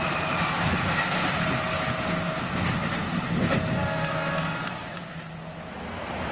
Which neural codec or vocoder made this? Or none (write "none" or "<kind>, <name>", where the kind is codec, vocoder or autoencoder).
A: none